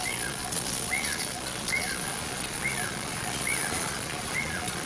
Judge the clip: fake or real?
fake